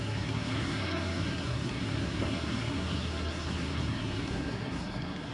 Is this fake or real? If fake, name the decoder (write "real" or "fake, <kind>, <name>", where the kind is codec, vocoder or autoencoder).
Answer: fake, codec, SNAC